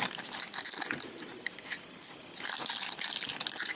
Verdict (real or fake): real